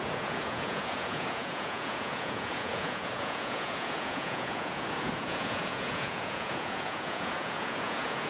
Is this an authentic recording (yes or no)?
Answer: no